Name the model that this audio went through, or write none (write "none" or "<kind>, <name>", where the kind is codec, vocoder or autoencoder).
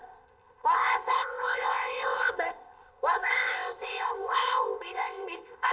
codec, ZipCodec